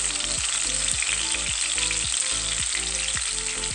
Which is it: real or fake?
real